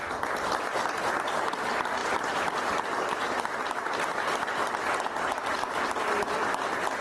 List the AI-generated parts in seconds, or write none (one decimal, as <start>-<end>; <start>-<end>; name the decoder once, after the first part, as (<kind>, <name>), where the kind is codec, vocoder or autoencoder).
none